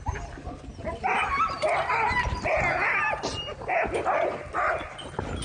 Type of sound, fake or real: real